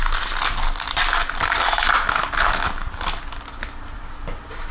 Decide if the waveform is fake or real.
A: real